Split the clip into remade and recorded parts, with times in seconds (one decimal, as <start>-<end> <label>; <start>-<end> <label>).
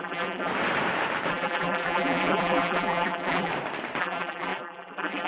0.0-0.5 remade; 0.5-1.3 recorded; 1.3-3.5 remade; 3.5-4.0 recorded; 4.0-5.3 remade